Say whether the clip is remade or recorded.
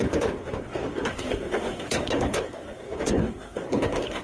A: remade